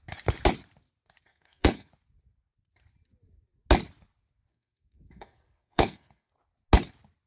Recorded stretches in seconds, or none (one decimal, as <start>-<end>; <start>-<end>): 0.0-1.3; 1.9-4.5; 6.3-7.3